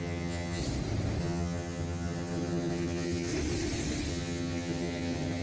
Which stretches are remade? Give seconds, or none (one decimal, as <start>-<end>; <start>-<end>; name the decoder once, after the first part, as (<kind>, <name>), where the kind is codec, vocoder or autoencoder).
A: 0.0-0.6 (vocoder, HiFi-GAN); 1.2-3.3; 4.1-5.4